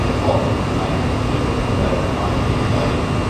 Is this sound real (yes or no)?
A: yes